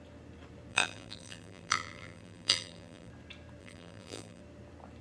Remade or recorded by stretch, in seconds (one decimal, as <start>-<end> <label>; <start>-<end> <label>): 0.0-0.7 recorded; 0.7-3.1 remade; 3.1-3.6 recorded; 3.6-4.4 remade; 4.4-5.0 recorded